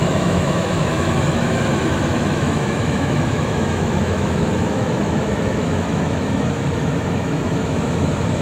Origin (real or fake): fake